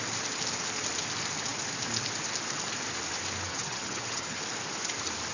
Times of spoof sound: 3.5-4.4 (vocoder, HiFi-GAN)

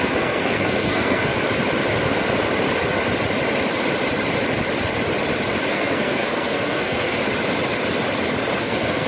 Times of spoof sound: 0.0-1.3 (codec, SNAC); 5.7-7.2; 8.6-9.1

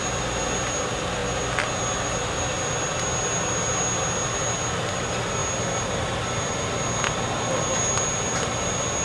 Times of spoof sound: none